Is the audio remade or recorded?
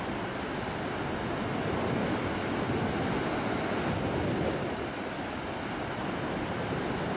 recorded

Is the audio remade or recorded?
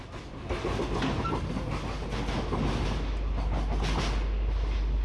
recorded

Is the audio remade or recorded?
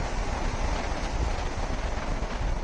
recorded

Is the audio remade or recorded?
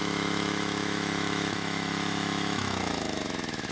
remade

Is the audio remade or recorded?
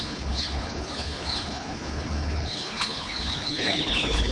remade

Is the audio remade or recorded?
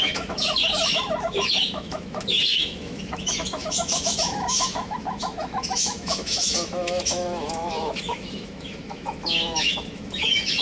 remade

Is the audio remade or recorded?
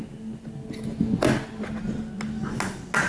recorded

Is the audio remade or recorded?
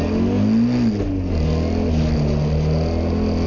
recorded